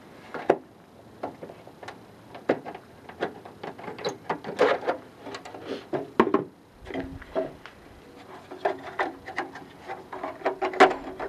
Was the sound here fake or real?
real